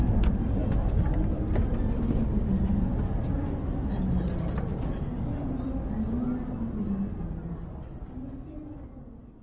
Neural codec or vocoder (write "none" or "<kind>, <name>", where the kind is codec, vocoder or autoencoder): none